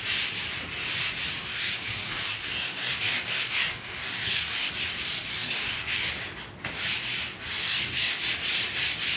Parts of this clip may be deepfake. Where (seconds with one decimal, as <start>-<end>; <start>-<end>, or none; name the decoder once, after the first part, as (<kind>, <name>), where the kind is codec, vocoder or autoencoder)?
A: 1.5-4.7 (codec, DAC); 5.3-6.1; 7.6-8.2